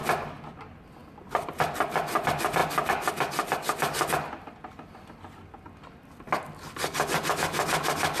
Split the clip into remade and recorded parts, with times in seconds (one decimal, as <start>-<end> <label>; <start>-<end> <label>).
0.0-0.5 remade; 0.5-1.0 recorded; 1.0-1.6 remade; 1.6-2.6 recorded; 2.6-6.4 remade; 6.4-8.2 recorded